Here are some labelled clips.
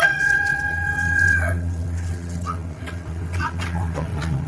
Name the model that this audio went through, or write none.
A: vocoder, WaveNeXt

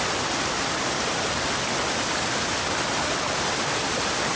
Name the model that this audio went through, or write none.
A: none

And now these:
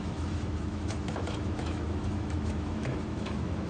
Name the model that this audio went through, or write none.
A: autoencoder, DAC-VAE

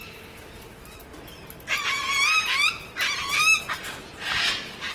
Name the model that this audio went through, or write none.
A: none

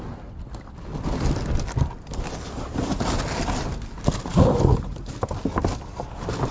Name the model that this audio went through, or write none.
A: none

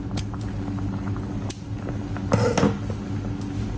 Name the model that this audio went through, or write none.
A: none